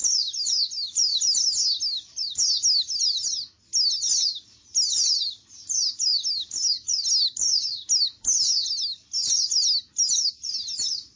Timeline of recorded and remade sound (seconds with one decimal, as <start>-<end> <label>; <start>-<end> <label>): 0.0-11.2 recorded